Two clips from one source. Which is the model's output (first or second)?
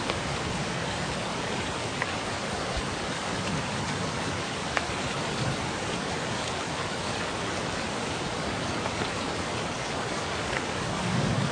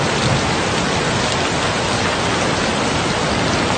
first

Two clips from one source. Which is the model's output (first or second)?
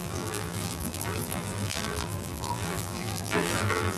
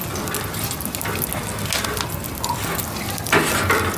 first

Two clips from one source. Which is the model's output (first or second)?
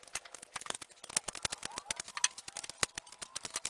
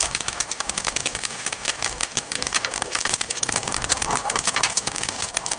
second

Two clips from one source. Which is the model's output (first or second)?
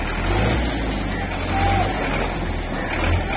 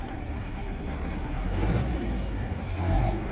second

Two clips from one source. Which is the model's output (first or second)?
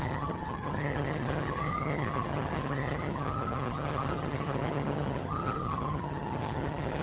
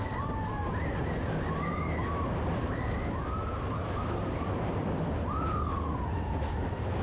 first